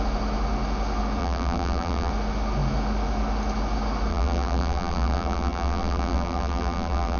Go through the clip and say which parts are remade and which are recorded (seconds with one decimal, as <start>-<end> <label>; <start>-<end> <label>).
0.0-1.2 recorded; 1.2-2.1 remade; 2.1-4.1 recorded; 4.1-7.2 remade